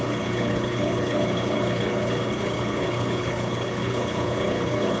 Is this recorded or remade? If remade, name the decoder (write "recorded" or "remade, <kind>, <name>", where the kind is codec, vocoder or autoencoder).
remade, codec, HILCodec